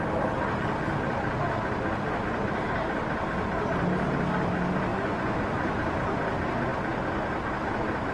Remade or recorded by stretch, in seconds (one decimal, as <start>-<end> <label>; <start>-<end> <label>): 0.0-4.9 recorded; 4.9-5.7 remade; 5.7-8.1 recorded